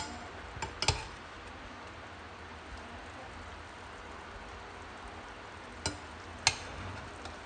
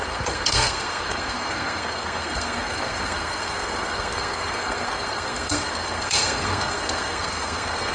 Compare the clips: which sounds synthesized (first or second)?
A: second